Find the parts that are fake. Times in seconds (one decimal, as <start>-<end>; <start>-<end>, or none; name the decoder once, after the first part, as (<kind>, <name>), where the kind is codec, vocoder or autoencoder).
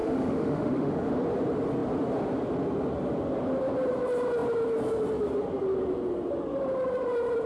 0.0-1.1 (autoencoder, DAC-VAE)